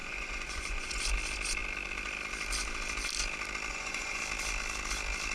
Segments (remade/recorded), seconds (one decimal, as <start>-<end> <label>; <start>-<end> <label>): 0.0-1.0 remade; 1.0-3.7 recorded; 3.7-4.2 remade; 4.2-5.3 recorded